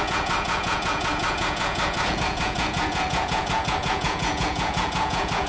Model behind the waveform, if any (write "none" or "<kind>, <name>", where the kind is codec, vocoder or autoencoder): vocoder, Vocos